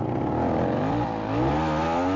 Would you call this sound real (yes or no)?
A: yes